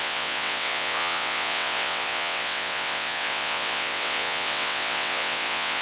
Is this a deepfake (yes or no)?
yes